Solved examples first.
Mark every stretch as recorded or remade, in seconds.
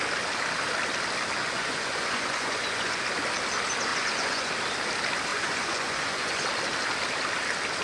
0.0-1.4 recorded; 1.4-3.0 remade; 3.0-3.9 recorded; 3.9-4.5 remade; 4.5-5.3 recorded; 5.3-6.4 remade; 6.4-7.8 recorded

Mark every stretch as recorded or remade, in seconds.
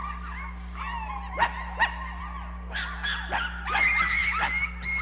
0.0-5.0 recorded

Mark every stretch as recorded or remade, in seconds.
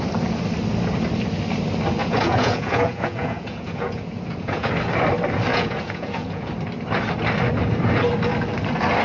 0.0-2.0 recorded; 2.0-4.7 remade; 4.7-5.5 recorded; 5.5-6.5 remade; 6.5-9.0 recorded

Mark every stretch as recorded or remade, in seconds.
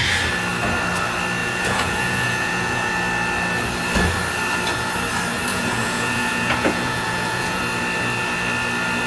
0.0-1.4 recorded; 1.4-2.9 remade; 2.9-5.5 recorded; 5.5-7.6 remade; 7.6-9.1 recorded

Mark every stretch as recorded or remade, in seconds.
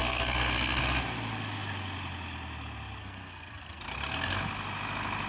0.0-0.8 remade; 0.8-3.0 recorded; 3.0-3.8 remade; 3.8-5.3 recorded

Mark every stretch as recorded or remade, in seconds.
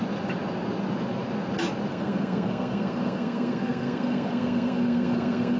0.0-1.9 recorded; 1.9-5.6 remade